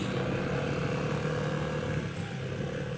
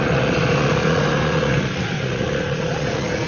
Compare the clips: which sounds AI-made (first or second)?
second